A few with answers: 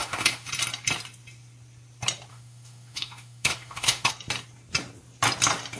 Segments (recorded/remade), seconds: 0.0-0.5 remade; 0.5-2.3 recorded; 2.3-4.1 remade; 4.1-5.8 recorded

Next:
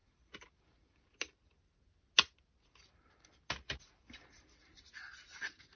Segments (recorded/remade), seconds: 0.0-4.6 recorded; 4.6-5.8 remade